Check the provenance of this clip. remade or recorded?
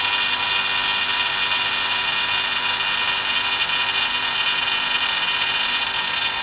recorded